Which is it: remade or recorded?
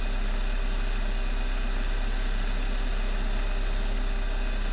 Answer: recorded